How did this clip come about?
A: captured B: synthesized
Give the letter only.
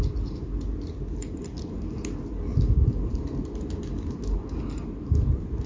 A